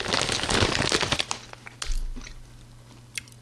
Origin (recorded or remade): recorded